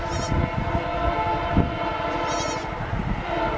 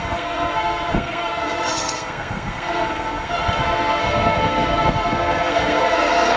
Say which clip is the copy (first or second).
second